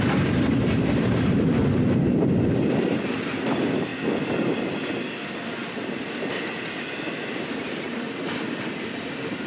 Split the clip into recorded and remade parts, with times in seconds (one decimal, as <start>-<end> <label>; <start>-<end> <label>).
0.0-3.9 remade; 3.9-7.5 recorded; 7.5-9.5 remade